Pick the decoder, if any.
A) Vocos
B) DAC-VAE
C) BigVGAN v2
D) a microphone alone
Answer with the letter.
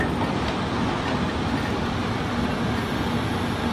D